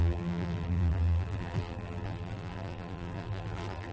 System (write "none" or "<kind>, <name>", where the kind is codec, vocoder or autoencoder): vocoder, BigVGAN v2